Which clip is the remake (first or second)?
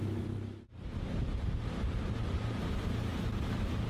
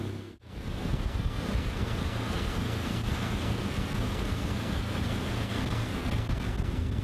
second